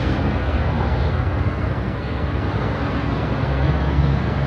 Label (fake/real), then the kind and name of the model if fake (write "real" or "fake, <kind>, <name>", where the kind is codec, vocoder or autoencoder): fake, codec, SNAC